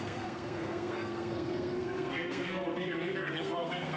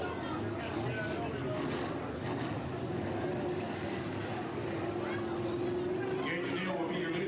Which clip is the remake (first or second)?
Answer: first